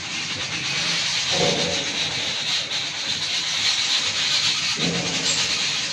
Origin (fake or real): real